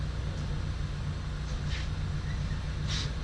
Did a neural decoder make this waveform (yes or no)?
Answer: no